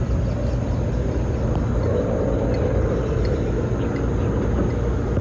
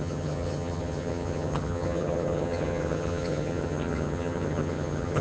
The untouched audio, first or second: first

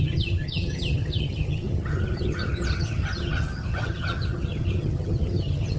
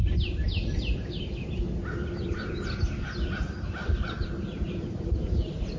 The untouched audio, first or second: second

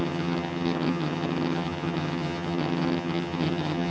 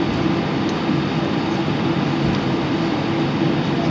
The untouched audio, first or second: second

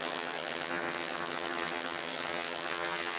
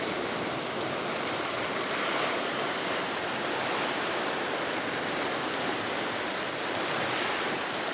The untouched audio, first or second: second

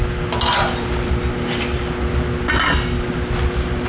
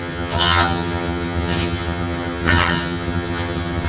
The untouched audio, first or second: first